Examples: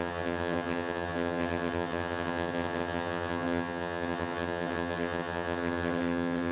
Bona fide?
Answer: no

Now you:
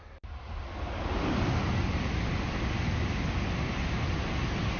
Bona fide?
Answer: yes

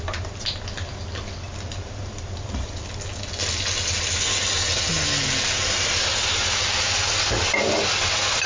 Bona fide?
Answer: yes